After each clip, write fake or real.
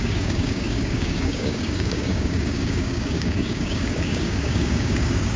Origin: fake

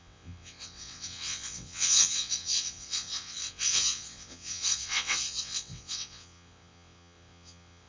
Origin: fake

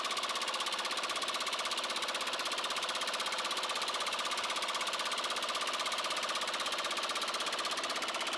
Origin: real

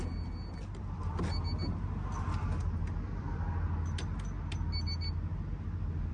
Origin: real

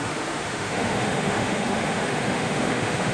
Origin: fake